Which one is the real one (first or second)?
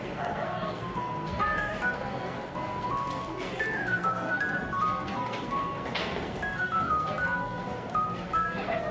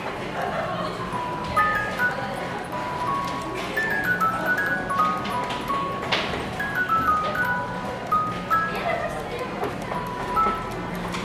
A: second